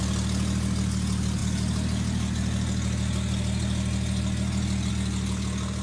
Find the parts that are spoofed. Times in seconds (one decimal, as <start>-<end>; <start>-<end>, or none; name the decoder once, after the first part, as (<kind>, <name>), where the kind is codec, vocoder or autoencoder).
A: none